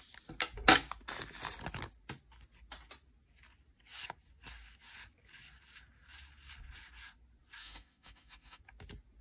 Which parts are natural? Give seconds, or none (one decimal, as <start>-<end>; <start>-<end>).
0.0-7.6; 8.6-9.2